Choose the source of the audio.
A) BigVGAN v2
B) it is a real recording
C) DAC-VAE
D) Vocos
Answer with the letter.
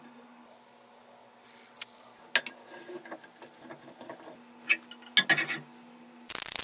B